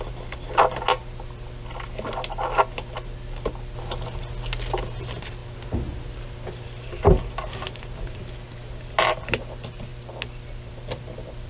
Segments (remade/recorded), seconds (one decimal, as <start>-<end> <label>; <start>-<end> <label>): 0.0-11.5 recorded